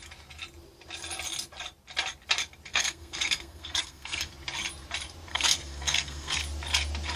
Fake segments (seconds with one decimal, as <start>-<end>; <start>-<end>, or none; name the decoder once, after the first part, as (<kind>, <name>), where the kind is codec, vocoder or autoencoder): 2.7-4.3 (codec, SNAC); 5.3-6.4